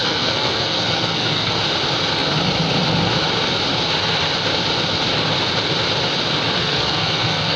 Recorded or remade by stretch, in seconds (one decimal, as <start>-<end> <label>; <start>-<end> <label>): 0.0-1.6 remade; 1.6-6.6 recorded; 6.6-7.6 remade

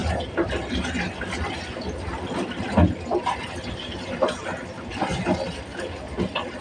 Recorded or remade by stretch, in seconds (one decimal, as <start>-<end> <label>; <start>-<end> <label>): 0.0-6.6 recorded